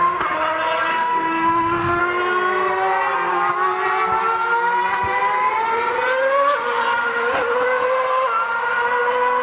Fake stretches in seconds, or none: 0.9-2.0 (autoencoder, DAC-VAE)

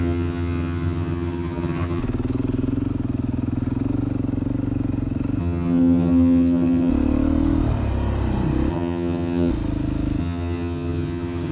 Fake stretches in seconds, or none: 0.0-2.0 (vocoder, HiFi-GAN); 5.4-6.9; 8.7-9.5; 10.2-11.5

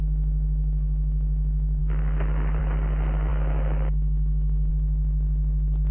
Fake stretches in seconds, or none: 1.8-2.6 (autoencoder, DAC-VAE); 3.3-4.7

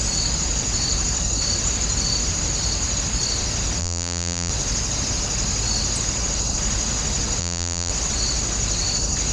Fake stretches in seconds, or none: 3.8-4.5 (vocoder, BigVGAN v2); 7.4-7.9